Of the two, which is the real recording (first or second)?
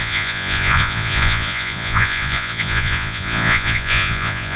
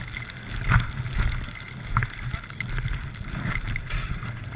second